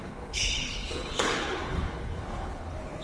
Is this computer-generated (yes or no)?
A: yes